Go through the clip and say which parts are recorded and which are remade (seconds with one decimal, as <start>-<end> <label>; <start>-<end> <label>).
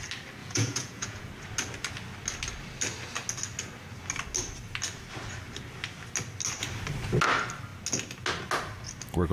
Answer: 0.0-0.4 recorded; 0.4-1.3 remade; 1.3-9.3 recorded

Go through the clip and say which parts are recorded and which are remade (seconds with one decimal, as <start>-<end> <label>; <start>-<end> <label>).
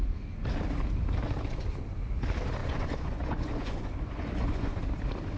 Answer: 0.0-2.6 recorded; 2.6-4.8 remade; 4.8-5.4 recorded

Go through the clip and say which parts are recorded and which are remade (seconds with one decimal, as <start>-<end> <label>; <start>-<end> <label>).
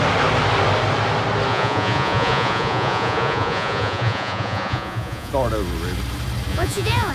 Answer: 0.0-1.5 recorded; 1.5-5.3 remade; 5.3-6.5 recorded; 6.5-7.1 remade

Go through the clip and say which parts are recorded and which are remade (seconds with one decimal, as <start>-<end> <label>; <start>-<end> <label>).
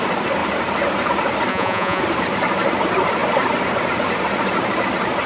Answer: 0.0-1.5 recorded; 1.5-2.0 remade; 2.0-5.3 recorded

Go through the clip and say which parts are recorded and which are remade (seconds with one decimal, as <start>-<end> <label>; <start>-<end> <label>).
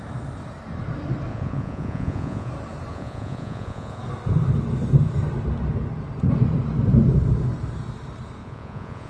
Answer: 0.0-1.3 recorded; 1.3-2.5 remade; 2.5-2.9 recorded; 2.9-4.0 remade; 4.0-8.4 recorded; 8.4-9.1 remade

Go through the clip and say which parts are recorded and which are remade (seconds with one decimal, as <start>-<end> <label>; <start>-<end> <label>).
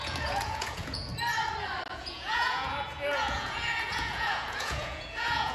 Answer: 0.0-1.1 remade; 1.1-1.9 recorded; 1.9-5.5 remade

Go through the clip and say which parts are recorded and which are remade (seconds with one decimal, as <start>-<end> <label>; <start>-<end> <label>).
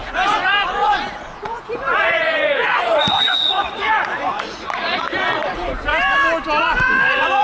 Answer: 0.0-5.9 remade; 5.9-6.6 recorded; 6.6-7.4 remade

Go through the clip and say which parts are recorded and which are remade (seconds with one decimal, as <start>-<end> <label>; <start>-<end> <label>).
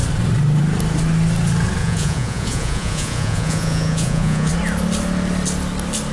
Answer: 0.0-1.8 recorded; 1.8-4.5 remade; 4.5-6.1 recorded